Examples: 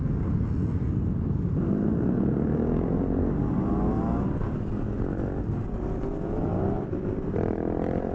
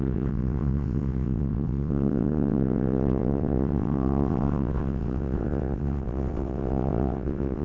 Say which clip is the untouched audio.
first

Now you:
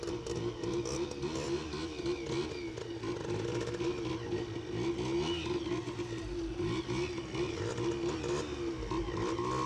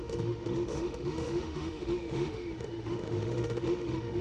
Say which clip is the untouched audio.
first